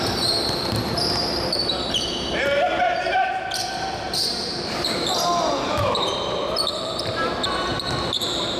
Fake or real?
fake